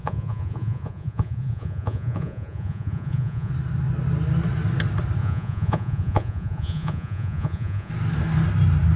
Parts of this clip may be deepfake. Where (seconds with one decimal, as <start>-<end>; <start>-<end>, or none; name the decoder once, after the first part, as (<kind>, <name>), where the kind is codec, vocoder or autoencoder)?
0.0-3.5 (vocoder, Vocos); 5.2-7.9